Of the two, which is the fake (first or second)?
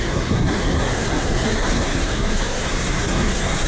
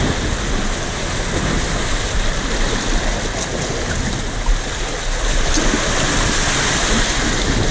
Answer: first